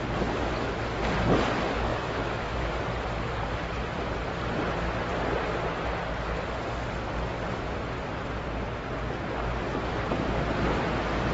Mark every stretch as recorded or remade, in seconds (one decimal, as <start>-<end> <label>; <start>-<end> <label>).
0.0-1.9 recorded; 1.9-2.8 remade; 2.8-11.3 recorded